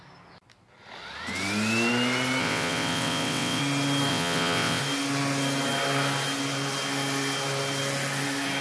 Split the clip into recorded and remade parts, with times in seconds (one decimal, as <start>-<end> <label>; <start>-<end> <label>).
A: 0.0-2.4 recorded; 2.4-3.6 remade; 3.6-4.1 recorded; 4.1-4.8 remade; 4.8-8.6 recorded